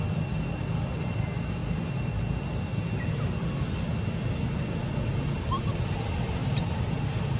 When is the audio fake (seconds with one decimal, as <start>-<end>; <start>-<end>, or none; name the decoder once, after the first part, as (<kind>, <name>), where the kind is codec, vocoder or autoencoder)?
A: none

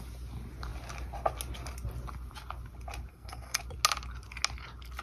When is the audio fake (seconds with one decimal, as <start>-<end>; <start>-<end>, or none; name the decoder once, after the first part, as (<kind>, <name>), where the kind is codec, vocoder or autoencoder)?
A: 3.1-3.6 (codec, SNAC)

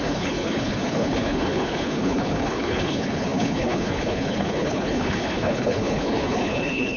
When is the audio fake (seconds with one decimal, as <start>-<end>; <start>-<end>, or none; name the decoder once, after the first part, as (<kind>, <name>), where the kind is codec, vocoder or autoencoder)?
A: 0.0-7.0 (codec, HILCodec)

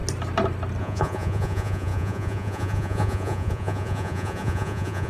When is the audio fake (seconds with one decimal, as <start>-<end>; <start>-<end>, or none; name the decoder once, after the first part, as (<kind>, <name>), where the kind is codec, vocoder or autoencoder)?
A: 0.8-5.1 (vocoder, Vocos)

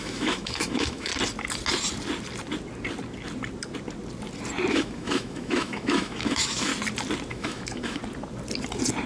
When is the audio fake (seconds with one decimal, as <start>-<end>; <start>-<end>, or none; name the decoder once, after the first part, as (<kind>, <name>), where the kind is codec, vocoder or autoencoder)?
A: 0.0-1.1 (autoencoder, DAC-VAE); 4.7-6.7; 7.3-8.0